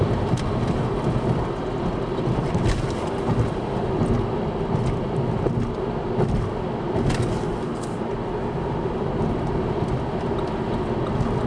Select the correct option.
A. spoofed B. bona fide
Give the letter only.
B